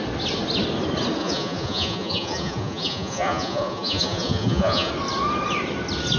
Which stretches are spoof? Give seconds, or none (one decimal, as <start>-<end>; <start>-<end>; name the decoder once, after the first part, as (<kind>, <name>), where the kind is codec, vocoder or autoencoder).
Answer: 1.2-4.9 (vocoder, Vocos)